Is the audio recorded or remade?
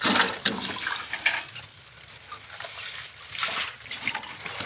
recorded